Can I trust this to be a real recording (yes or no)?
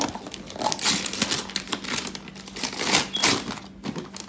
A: yes